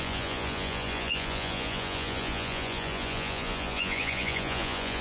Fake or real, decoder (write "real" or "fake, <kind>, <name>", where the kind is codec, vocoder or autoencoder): fake, vocoder, Vocos